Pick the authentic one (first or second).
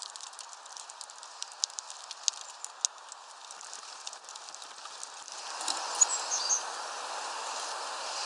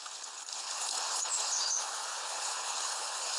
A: first